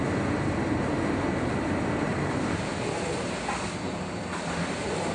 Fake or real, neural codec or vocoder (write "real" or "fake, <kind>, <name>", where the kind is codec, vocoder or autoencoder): real